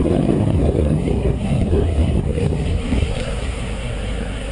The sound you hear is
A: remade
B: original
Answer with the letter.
A